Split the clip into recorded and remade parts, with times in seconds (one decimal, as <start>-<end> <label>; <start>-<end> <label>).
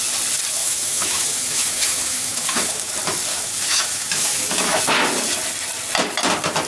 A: 0.0-0.6 recorded; 0.6-2.9 remade; 2.9-3.3 recorded; 3.3-4.8 remade; 4.8-6.7 recorded